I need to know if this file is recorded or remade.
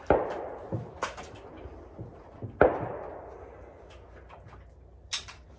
recorded